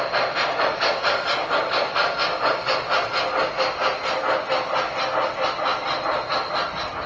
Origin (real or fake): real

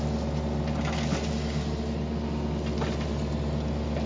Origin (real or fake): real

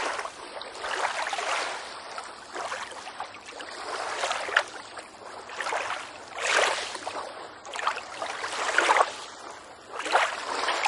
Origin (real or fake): real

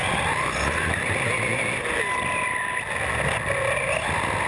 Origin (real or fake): real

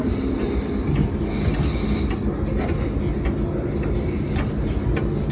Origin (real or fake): real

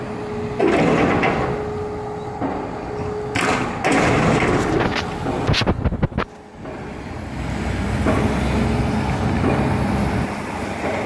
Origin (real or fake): real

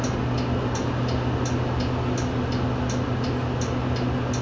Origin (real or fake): real